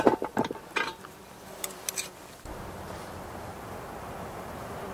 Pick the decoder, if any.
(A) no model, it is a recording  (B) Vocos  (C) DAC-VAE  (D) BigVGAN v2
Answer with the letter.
D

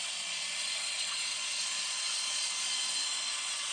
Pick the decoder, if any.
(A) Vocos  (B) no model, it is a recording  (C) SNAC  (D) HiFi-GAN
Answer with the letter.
A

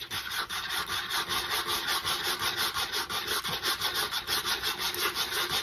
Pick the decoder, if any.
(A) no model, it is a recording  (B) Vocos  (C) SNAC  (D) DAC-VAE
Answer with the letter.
A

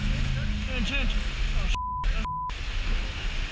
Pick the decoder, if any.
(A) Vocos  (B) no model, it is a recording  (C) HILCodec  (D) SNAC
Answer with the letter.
B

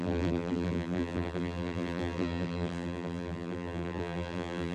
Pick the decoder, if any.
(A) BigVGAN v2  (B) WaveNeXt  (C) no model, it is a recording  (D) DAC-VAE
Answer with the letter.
A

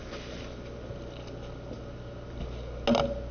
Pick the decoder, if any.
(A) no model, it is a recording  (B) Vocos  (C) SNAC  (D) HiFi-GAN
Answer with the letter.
A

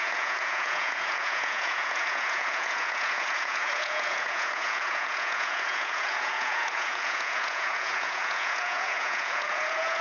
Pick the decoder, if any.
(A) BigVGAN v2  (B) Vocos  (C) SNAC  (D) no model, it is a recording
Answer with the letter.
B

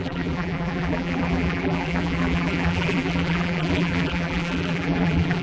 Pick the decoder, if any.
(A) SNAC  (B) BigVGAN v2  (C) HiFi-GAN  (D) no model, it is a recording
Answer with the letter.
B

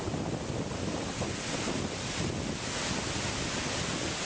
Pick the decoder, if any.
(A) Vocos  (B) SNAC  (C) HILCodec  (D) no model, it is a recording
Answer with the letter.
D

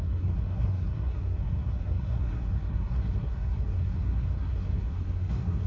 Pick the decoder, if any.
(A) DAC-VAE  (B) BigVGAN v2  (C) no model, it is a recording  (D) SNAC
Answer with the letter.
D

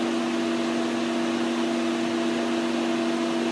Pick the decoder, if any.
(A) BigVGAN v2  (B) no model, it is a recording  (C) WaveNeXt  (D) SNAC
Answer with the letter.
B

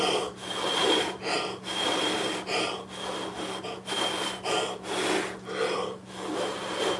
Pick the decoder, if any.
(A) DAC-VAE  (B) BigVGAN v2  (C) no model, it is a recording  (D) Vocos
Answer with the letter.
C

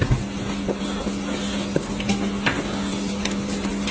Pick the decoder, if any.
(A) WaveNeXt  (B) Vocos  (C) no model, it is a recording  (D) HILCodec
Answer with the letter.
C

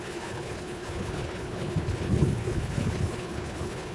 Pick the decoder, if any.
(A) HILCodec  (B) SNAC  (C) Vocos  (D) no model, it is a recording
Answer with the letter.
A